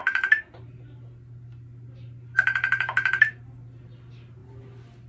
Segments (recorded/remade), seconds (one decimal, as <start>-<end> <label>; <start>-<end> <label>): 0.0-5.1 recorded